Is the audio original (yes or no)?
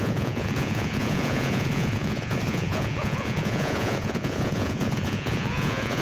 no